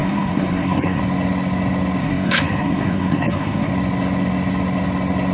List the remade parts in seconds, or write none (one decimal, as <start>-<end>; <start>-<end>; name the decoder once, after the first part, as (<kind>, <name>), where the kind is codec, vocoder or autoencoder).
0.0-1.0 (codec, SNAC); 2.0-3.7